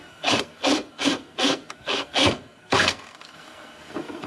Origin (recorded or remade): remade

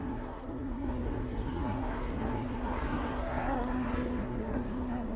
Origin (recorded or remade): remade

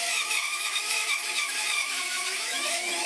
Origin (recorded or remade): remade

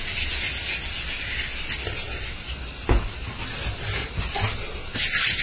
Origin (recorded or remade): recorded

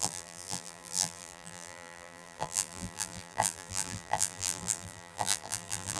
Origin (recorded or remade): remade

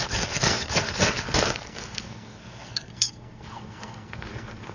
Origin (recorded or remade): remade